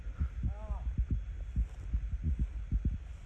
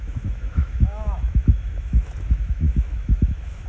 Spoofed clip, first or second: second